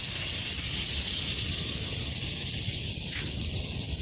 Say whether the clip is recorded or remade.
recorded